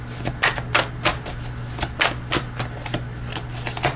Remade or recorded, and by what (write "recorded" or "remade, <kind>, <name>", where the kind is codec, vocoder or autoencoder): recorded